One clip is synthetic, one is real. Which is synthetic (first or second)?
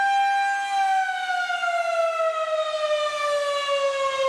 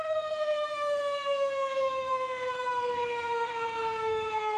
second